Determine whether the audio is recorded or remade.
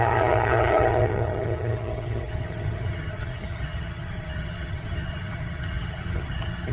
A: remade